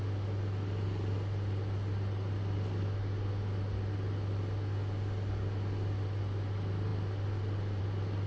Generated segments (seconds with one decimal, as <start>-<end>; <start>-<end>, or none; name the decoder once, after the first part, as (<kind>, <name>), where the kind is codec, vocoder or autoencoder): none